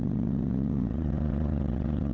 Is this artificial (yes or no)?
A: yes